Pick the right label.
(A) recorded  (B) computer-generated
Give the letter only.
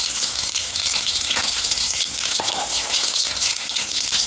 B